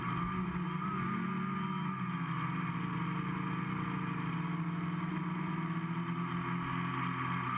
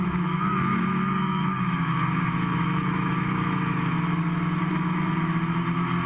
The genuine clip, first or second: first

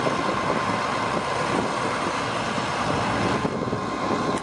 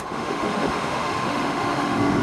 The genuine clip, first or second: first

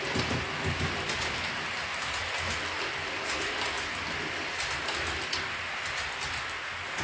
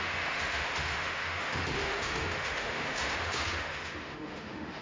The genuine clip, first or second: first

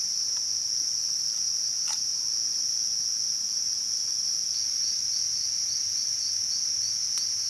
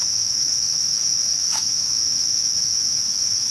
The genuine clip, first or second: first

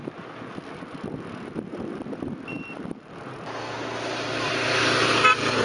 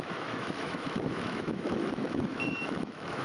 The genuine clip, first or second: first